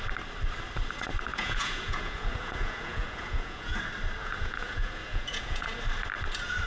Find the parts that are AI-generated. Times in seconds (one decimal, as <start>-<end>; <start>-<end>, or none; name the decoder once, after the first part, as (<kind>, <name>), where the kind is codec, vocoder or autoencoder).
1.3-3.8 (vocoder, Vocos); 4.2-5.8